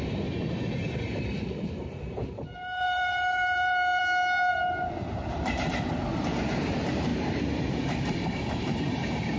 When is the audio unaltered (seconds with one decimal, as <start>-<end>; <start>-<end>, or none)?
4.0-4.5